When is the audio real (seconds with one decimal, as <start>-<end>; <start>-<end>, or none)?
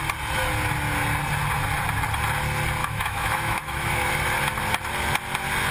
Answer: 0.0-2.8; 4.1-5.7